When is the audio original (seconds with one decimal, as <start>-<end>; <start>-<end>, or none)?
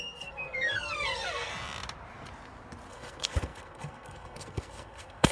1.5-2.9